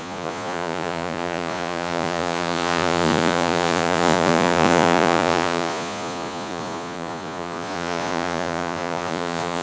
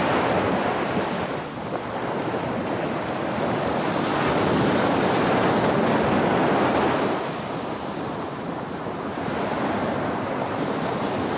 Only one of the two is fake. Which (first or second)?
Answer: first